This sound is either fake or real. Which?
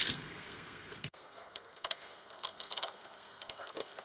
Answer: fake